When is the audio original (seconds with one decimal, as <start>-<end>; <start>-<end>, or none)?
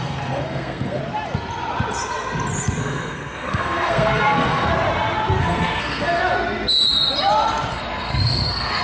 1.0-2.8; 4.7-5.4; 6.2-7.7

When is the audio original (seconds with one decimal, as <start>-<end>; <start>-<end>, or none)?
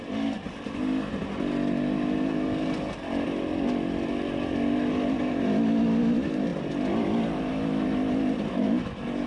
0.0-9.3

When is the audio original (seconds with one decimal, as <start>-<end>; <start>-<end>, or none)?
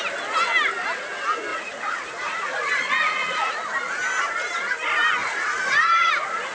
0.0-1.5; 3.5-5.2; 6.1-6.5